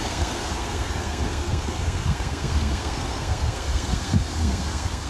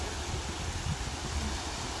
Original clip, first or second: second